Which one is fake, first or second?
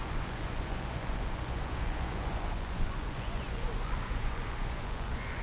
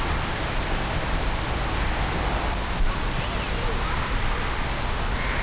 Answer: first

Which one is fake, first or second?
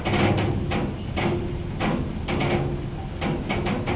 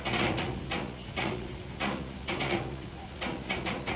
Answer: second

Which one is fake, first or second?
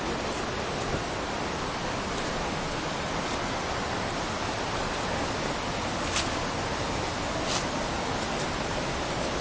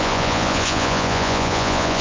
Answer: second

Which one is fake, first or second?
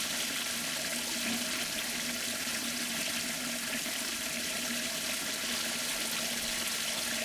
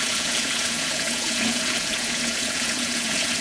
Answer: second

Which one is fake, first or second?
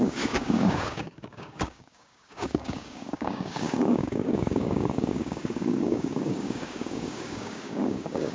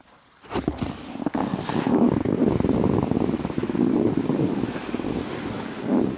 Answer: first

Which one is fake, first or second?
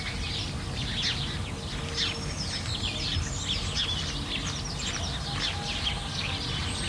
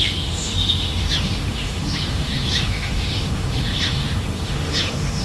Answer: second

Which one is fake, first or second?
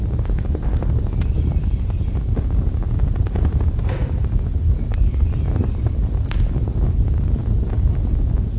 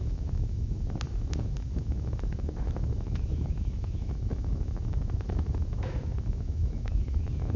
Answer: second